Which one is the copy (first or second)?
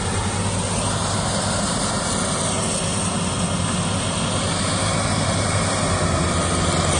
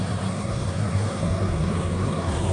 second